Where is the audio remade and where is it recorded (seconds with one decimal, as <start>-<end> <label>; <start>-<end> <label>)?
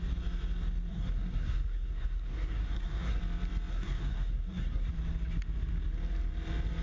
0.0-0.9 recorded; 0.9-3.2 remade; 3.2-3.7 recorded; 3.7-4.9 remade; 4.9-6.8 recorded